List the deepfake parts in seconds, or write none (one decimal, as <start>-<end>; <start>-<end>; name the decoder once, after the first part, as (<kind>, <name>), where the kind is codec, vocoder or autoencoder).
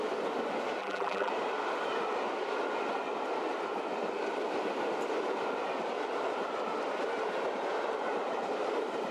0.8-1.3 (vocoder, BigVGAN v2)